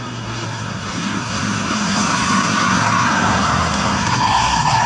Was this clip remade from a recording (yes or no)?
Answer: yes